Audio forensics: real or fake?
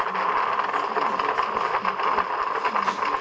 real